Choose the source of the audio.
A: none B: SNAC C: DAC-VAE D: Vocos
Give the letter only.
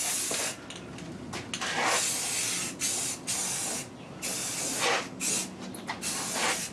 A